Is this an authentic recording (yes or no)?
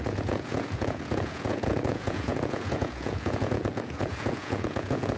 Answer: no